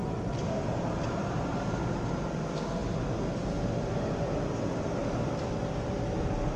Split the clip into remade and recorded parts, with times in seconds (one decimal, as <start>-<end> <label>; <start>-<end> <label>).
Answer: 0.0-6.6 recorded